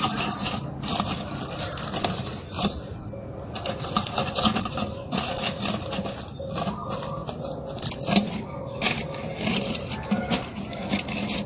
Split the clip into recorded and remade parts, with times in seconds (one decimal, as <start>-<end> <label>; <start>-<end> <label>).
0.0-11.5 recorded